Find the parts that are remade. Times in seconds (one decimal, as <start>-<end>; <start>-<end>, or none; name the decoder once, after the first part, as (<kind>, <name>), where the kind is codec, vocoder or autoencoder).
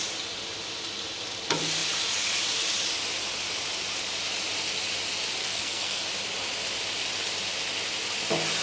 5.4-6.0 (codec, SNAC)